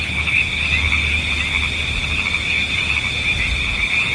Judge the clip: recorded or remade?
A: recorded